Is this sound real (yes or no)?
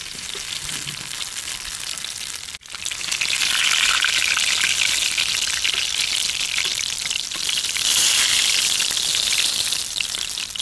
yes